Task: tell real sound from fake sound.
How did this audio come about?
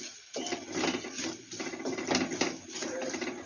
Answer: real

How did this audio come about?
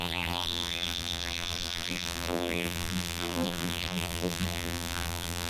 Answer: fake